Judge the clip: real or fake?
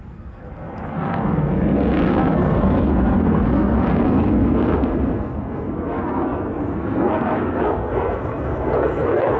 fake